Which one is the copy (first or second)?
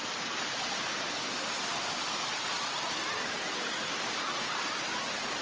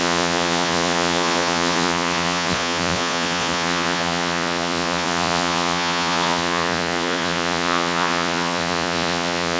second